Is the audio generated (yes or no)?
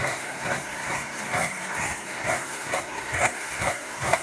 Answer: yes